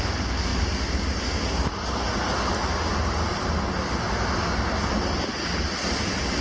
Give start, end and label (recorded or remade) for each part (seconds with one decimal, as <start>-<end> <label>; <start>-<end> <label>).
0.0-6.4 recorded